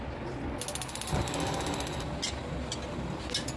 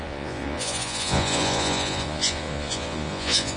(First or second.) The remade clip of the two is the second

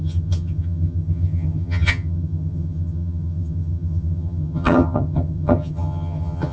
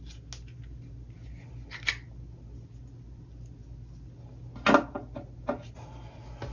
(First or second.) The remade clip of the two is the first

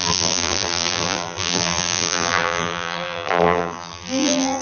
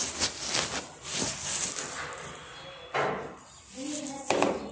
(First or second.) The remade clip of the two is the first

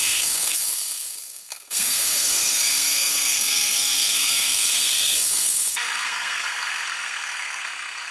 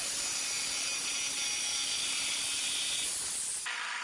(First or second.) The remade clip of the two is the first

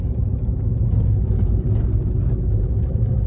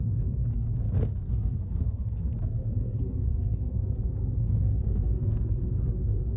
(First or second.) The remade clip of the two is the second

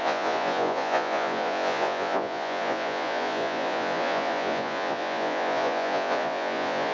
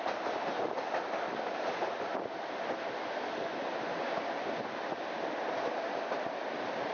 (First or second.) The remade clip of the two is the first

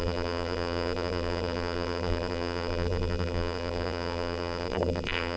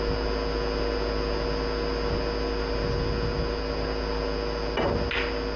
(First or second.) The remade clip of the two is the first